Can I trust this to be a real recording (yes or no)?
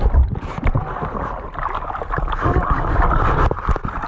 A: yes